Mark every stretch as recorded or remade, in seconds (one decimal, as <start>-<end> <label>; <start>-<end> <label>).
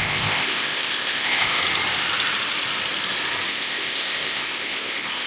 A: 0.0-1.6 remade; 1.6-3.5 recorded; 3.5-5.3 remade